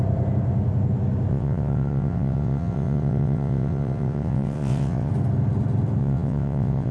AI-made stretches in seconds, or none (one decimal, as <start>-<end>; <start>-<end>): 1.3-5.1; 6.0-6.9